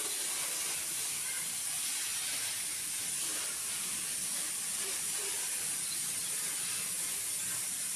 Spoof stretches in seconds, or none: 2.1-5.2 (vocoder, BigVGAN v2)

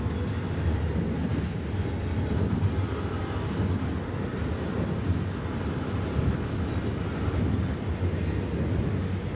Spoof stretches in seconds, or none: none

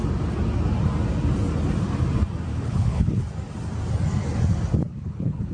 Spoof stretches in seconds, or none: 2.5-3.2 (codec, HILCodec); 4.9-5.5

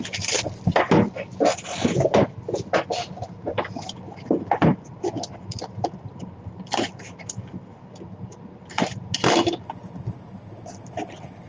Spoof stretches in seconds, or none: none

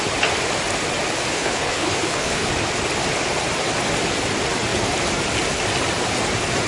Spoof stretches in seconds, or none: 1.3-2.5 (codec, HILCodec)

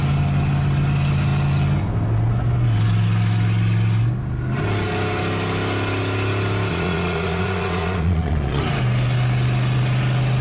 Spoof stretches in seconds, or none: 6.7-8.6 (vocoder, Vocos)

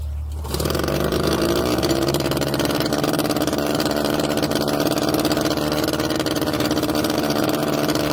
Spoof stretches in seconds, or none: 0.0-4.5 (vocoder, BigVGAN v2); 6.3-8.1

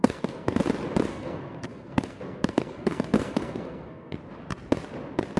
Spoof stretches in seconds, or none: 0.0-0.6 (codec, SNAC); 1.1-4.2